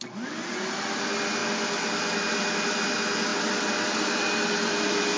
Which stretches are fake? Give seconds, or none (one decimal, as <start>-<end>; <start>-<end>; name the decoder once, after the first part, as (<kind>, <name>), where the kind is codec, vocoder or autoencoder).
none